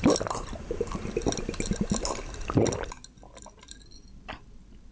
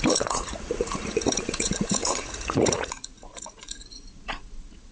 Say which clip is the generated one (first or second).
second